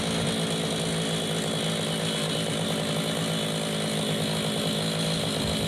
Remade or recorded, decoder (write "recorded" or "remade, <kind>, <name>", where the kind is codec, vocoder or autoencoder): recorded